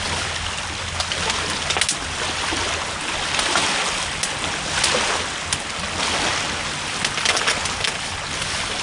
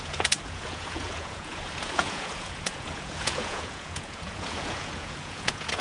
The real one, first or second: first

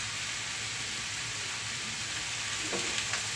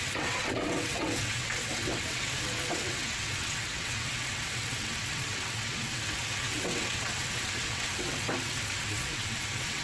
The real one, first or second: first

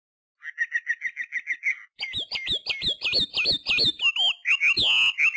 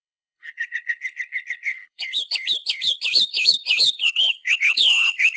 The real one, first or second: first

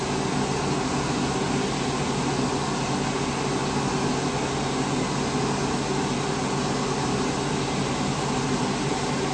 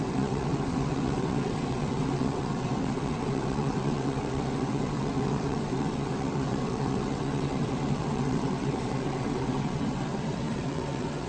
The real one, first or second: first